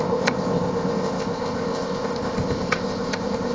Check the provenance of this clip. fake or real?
fake